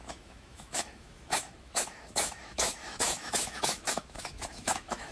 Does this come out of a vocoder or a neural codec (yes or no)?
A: yes